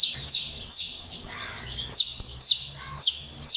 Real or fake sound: fake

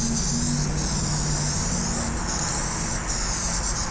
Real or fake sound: real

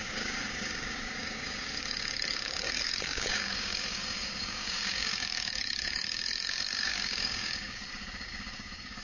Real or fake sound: fake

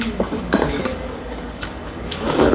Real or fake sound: fake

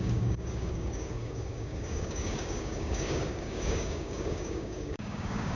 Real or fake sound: fake